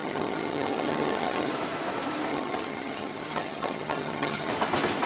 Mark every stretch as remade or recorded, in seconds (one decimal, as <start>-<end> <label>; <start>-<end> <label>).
0.0-1.5 remade; 1.5-2.3 recorded; 2.3-4.5 remade; 4.5-5.1 recorded